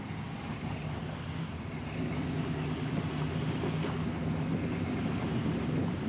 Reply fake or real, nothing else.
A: real